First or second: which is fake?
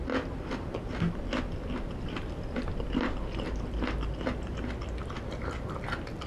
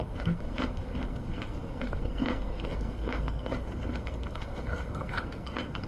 second